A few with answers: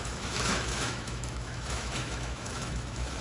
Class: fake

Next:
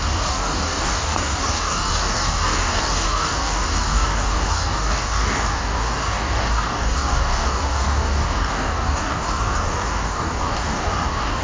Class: fake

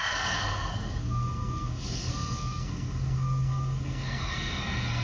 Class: fake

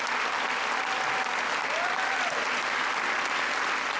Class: real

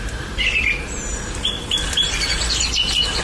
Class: real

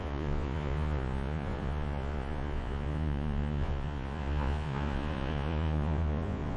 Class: fake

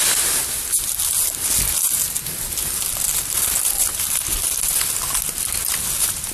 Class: real